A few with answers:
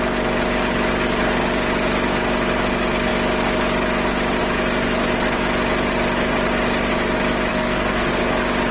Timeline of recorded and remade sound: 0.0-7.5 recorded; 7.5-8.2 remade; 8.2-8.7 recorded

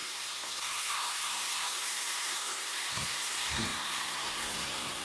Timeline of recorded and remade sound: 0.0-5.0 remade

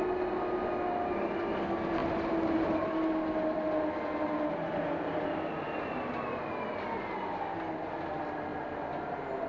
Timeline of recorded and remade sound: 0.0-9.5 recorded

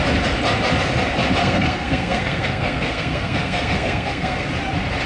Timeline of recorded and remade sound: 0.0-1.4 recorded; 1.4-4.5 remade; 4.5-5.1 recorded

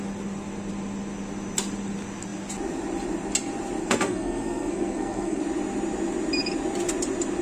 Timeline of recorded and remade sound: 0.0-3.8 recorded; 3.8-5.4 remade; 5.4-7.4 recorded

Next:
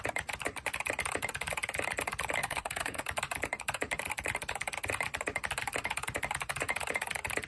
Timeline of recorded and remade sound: 0.0-2.4 recorded; 2.4-3.0 remade; 3.0-7.5 recorded